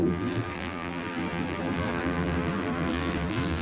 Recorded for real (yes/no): no